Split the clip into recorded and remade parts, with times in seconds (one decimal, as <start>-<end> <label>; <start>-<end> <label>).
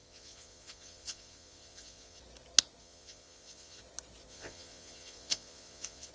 0.0-2.2 remade; 2.2-2.8 recorded; 2.8-3.8 remade; 3.8-4.3 recorded; 4.3-6.1 remade